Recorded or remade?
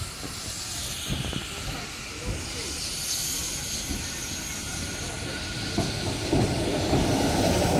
recorded